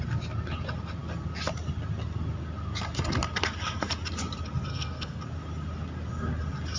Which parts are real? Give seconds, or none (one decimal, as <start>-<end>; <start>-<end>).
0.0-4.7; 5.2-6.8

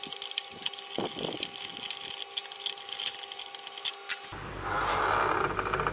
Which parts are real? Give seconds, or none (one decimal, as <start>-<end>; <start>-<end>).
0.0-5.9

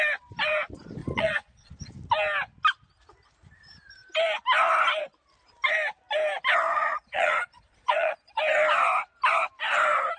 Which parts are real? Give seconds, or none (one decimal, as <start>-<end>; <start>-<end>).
0.0-1.0; 1.7-6.7; 8.4-10.2

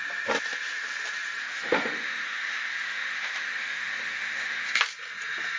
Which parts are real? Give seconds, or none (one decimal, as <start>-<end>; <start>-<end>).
0.0-1.4; 4.8-5.6

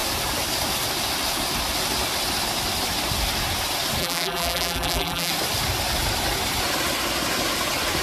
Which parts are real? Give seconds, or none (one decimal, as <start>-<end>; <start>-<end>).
0.0-4.0; 5.3-8.0

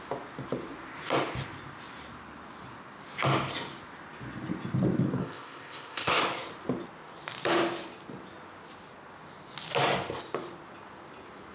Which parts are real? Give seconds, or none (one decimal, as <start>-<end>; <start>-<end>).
0.0-5.2; 6.2-11.5